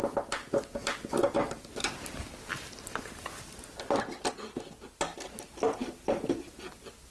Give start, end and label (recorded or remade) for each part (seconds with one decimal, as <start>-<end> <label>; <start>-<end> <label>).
0.0-7.1 recorded